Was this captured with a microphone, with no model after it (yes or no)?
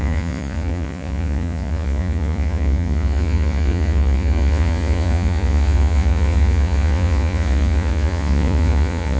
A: no